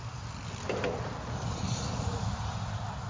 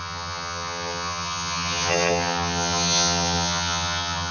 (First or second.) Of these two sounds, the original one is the first